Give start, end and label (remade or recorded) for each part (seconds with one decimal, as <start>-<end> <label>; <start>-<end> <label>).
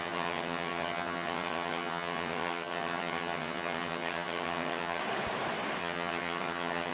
0.0-5.0 remade; 5.0-5.8 recorded; 5.8-6.9 remade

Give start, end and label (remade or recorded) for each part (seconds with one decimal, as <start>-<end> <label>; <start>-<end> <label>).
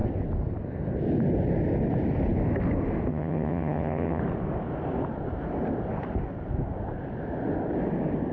0.0-3.1 recorded; 3.1-4.2 remade; 4.2-8.3 recorded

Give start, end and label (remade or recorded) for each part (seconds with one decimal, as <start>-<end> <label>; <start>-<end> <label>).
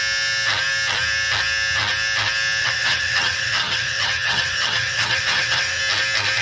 0.0-2.6 recorded; 2.6-5.8 remade; 5.8-6.4 recorded